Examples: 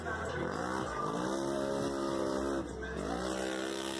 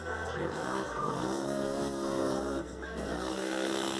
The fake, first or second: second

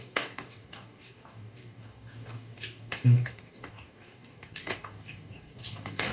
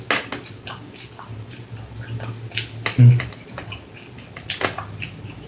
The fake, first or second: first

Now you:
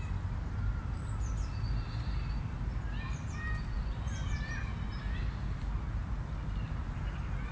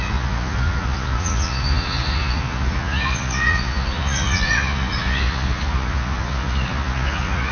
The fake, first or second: second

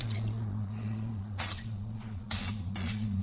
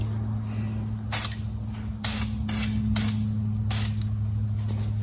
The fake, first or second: first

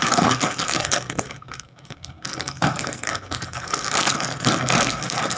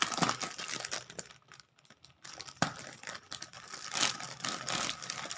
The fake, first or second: first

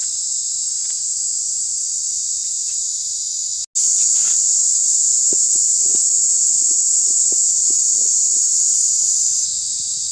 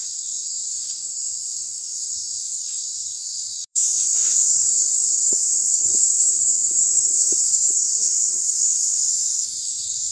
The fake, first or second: second